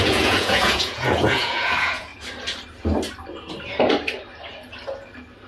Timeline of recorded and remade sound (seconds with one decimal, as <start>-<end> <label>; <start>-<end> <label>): 0.0-2.1 remade; 2.1-5.5 recorded